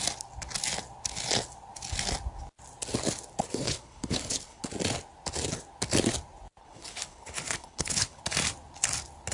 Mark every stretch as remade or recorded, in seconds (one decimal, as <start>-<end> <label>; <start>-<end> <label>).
0.0-3.4 recorded; 3.4-4.6 remade; 4.6-6.6 recorded; 6.6-8.2 remade; 8.2-9.3 recorded